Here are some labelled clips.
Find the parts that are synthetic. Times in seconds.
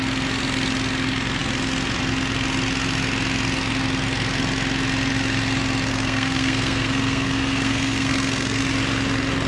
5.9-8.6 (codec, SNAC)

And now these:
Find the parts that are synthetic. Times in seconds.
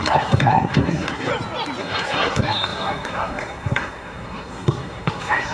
0.0-1.3 (codec, SNAC); 1.8-5.5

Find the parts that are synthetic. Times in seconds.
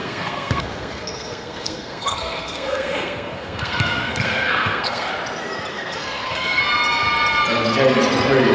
0.0-5.1 (codec, SNAC); 5.7-6.6